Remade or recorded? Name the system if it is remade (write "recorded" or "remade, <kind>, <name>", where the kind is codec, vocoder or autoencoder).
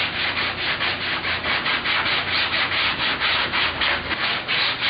recorded